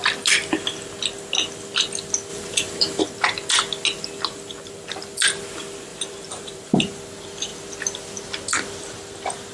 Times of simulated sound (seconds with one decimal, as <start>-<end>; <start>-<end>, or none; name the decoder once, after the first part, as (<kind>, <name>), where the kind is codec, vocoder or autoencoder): 2.3-3.0 (vocoder, BigVGAN v2); 5.9-6.7

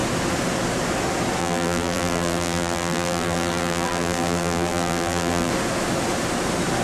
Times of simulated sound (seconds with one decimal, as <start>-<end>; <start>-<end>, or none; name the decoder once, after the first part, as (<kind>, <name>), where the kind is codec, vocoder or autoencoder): 1.4-5.5 (vocoder, BigVGAN v2)

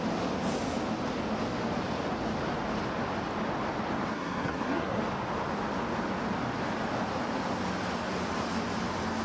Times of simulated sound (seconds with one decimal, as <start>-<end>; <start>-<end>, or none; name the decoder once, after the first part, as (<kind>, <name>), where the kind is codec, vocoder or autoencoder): 4.1-5.0 (codec, SNAC)